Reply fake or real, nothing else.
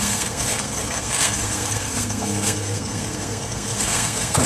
fake